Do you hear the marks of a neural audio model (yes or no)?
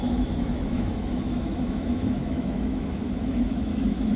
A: yes